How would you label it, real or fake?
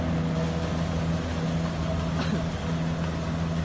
real